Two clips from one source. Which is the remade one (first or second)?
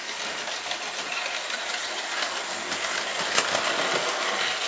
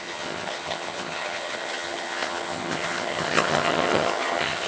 second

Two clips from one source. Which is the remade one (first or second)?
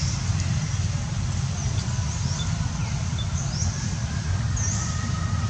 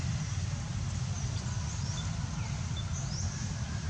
first